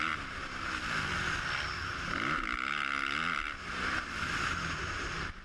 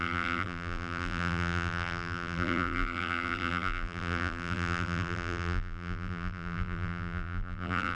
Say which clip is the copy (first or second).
second